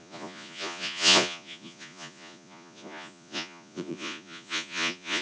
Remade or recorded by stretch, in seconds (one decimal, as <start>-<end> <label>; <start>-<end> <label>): 0.0-5.2 remade